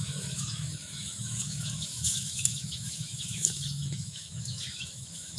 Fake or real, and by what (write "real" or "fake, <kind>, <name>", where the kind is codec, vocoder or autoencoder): fake, autoencoder, DAC-VAE